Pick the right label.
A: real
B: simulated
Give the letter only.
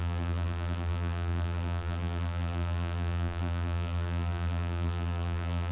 B